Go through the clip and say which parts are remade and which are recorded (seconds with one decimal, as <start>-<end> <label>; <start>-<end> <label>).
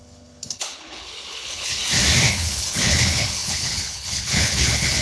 0.0-1.8 remade; 1.8-2.3 recorded; 2.3-5.0 remade